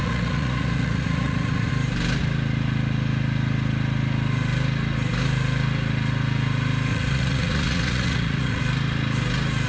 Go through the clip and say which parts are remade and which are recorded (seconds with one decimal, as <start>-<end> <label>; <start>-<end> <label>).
0.0-1.7 remade; 1.7-6.9 recorded; 6.9-8.6 remade; 8.6-9.7 recorded